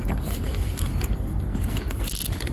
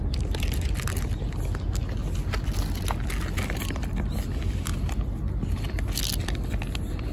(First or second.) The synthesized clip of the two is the first